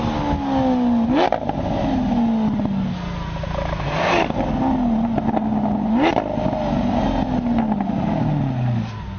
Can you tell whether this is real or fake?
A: real